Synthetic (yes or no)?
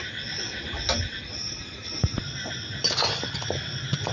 no